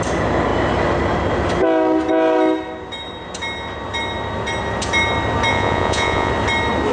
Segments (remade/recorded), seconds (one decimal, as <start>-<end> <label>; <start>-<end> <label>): 0.0-5.5 recorded; 5.5-6.3 remade; 6.3-6.9 recorded